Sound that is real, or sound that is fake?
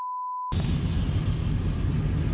real